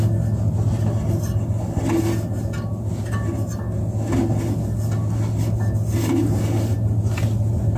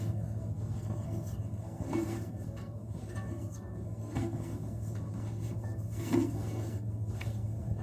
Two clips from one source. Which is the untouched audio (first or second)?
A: first